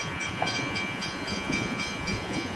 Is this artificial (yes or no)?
yes